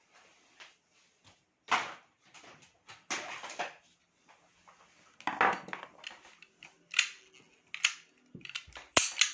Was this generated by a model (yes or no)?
no